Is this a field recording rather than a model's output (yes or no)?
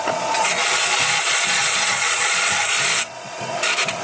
no